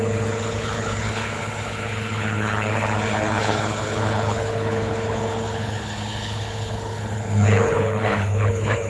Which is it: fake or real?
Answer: fake